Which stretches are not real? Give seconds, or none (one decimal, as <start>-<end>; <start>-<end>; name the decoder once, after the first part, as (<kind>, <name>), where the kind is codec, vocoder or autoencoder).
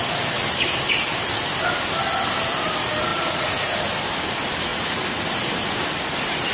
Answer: 3.1-3.7 (vocoder, Vocos); 4.7-5.3